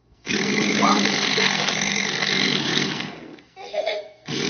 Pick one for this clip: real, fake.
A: fake